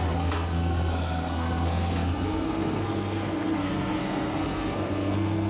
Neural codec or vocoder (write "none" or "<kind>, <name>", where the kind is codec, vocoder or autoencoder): codec, SNAC